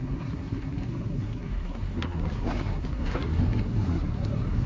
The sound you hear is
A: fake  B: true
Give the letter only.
A